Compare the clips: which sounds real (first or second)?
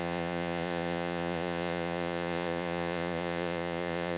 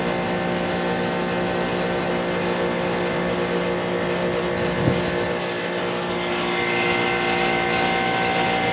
second